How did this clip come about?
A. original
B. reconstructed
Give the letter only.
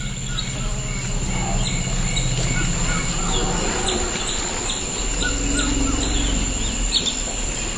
A